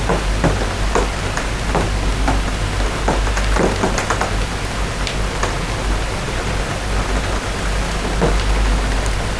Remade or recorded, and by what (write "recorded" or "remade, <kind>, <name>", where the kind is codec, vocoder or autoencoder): recorded